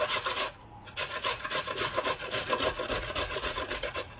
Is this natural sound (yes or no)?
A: no